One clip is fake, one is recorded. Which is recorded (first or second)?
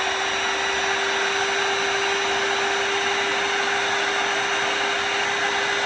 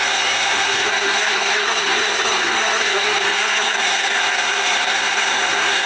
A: first